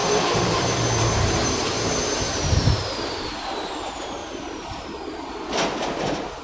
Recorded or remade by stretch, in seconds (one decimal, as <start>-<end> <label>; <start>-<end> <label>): 0.0-6.4 remade